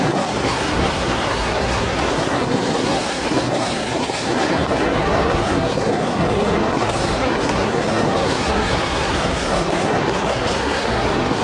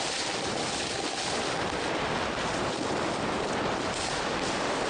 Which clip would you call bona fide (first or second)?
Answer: second